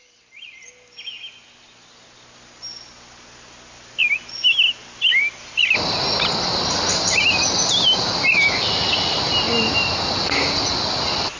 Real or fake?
real